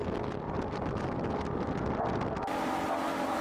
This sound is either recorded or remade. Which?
recorded